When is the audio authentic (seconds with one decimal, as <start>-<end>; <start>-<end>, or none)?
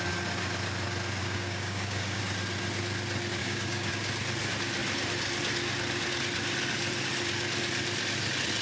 0.0-1.2; 2.2-3.4; 3.9-8.6